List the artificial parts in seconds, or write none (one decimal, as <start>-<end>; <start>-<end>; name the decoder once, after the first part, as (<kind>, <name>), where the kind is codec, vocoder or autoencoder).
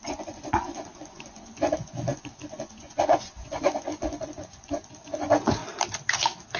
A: 0.0-5.6 (vocoder, Vocos)